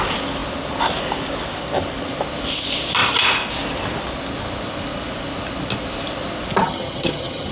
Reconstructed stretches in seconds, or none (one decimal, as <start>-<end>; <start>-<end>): 6.6-7.5